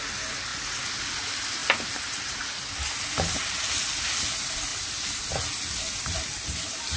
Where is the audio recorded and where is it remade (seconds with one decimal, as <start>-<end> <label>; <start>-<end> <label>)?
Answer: 0.0-7.0 recorded